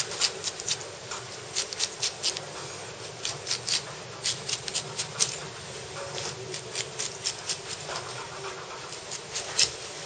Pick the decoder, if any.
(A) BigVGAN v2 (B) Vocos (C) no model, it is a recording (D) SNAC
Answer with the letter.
C